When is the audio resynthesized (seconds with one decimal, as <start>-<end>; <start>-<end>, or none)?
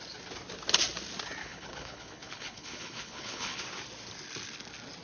1.4-3.6